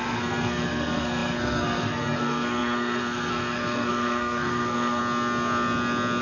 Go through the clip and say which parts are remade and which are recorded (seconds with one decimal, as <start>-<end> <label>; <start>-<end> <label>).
0.0-5.0 remade; 5.0-6.2 recorded